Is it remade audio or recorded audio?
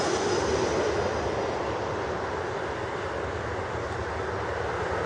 recorded